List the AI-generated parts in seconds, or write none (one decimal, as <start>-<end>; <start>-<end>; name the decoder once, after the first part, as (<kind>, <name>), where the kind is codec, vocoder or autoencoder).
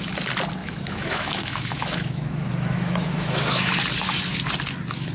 0.6-3.7 (autoencoder, DAC-VAE)